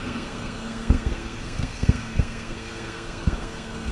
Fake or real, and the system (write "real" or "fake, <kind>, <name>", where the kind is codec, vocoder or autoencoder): fake, codec, SNAC